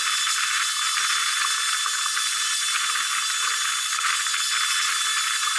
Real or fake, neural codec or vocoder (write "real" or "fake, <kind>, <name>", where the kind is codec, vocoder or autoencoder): real